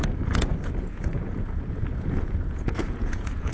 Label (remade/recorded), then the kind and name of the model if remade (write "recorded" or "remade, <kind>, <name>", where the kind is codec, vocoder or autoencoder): remade, vocoder, Vocos